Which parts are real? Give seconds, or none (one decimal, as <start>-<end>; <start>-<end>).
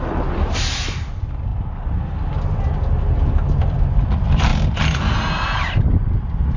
1.5-3.6; 4.5-6.6